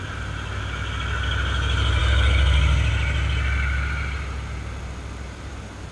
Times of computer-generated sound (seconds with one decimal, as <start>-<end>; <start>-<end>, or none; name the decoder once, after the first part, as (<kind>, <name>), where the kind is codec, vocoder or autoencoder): none